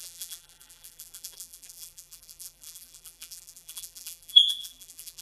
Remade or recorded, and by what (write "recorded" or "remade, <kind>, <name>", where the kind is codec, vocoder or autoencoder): remade, vocoder, BigVGAN v2